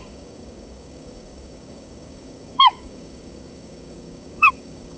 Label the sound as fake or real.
fake